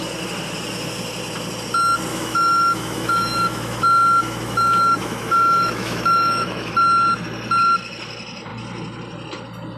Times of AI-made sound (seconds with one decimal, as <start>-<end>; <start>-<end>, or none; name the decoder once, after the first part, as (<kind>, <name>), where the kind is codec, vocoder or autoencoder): 2.1-6.7 (autoencoder, DAC-VAE)